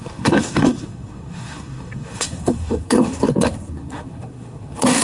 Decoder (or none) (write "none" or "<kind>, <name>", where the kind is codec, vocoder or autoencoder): codec, SNAC